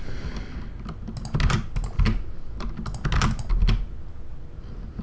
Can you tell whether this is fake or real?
real